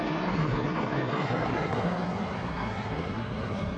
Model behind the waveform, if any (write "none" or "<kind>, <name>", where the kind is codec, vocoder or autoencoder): codec, SNAC